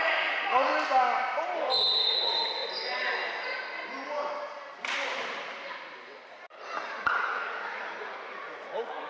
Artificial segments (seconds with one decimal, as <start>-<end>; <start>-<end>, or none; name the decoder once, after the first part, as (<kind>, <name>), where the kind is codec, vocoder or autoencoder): 0.0-0.7 (vocoder, Vocos); 2.0-2.6; 6.3-9.1